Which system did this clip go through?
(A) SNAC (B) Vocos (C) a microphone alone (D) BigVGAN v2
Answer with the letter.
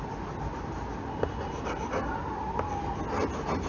C